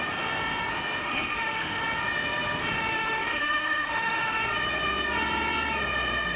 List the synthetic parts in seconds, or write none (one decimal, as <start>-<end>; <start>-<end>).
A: 1.0-1.8; 2.9-4.4